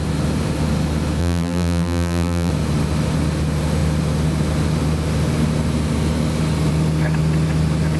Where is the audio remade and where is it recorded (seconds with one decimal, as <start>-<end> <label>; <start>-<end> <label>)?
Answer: 0.0-1.2 recorded; 1.2-2.5 remade; 2.5-8.0 recorded